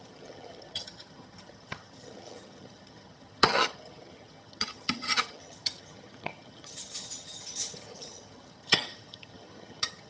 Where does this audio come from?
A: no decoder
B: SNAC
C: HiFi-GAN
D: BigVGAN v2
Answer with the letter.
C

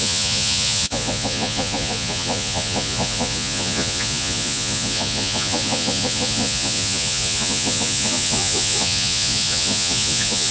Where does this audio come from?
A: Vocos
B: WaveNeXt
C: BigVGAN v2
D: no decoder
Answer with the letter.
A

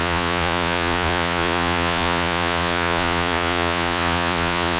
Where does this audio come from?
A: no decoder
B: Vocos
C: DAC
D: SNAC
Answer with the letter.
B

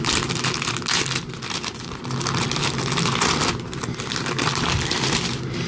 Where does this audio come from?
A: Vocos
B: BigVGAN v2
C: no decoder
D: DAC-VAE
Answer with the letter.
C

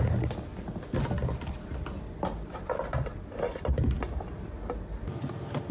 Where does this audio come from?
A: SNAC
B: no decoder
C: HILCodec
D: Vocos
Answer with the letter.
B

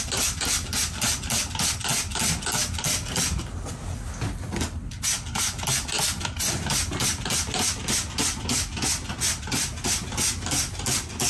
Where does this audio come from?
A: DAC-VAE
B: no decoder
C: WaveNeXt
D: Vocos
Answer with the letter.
B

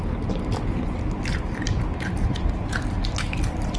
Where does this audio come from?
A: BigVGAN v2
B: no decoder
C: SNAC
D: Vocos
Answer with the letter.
B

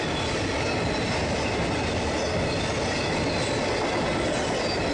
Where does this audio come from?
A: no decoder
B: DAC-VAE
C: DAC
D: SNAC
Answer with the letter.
A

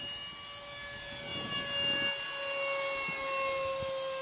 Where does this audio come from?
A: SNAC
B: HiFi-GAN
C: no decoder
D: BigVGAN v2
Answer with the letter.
C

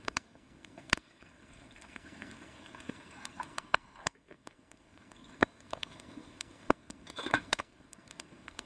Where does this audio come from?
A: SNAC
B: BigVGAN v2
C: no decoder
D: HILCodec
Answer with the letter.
A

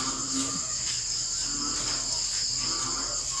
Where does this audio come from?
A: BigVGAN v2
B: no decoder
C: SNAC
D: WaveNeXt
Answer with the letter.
B